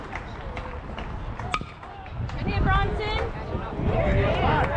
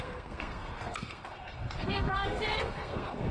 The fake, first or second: second